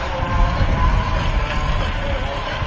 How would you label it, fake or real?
real